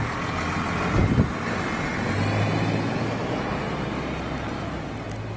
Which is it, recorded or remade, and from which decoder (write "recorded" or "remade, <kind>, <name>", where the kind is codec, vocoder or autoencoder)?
recorded